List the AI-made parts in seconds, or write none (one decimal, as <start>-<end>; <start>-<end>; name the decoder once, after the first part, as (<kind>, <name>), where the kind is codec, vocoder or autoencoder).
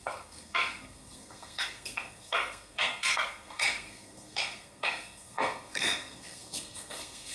0.0-7.3 (codec, SNAC)